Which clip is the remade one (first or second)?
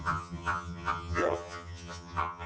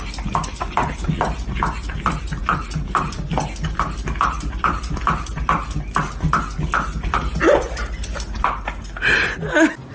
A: first